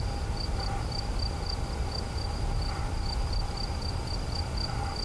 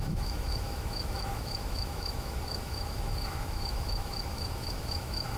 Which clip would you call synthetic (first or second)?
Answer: second